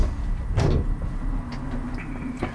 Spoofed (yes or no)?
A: no